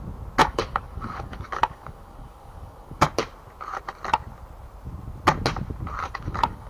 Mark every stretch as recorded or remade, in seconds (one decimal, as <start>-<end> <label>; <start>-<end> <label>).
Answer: 0.0-0.4 recorded; 0.4-3.1 remade; 3.1-6.0 recorded; 6.0-6.7 remade